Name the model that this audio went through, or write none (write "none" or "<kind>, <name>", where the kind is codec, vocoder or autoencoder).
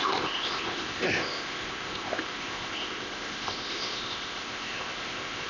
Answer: codec, ZipCodec